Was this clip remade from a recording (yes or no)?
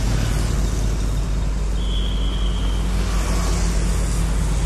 no